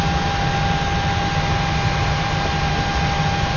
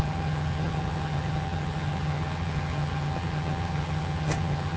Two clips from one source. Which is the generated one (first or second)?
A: second